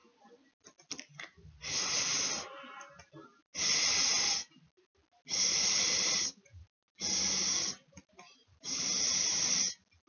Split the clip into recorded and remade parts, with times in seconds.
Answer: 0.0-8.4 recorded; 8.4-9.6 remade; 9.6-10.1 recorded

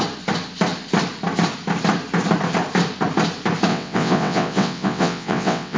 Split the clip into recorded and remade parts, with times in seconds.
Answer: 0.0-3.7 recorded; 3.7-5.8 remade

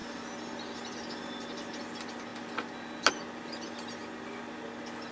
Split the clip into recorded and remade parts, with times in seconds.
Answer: 0.0-5.1 recorded

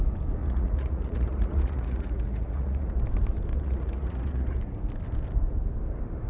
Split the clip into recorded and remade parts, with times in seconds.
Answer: 0.0-0.4 recorded; 0.4-3.0 remade; 3.0-3.5 recorded; 3.5-4.6 remade; 4.6-6.3 recorded

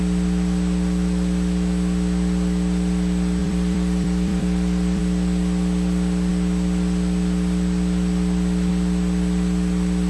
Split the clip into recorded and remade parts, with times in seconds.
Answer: 0.0-3.4 recorded; 3.4-5.0 remade; 5.0-10.1 recorded